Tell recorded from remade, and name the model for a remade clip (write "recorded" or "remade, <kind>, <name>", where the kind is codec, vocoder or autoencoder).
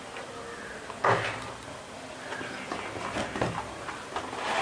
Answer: recorded